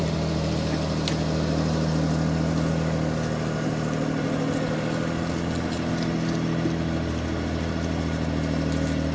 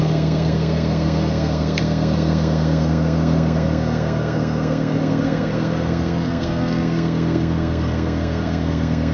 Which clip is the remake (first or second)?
second